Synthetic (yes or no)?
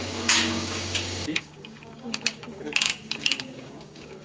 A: yes